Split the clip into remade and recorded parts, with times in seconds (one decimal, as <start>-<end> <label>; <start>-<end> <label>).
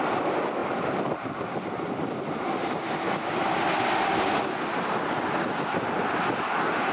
0.0-0.6 recorded; 0.6-4.7 remade; 4.7-6.9 recorded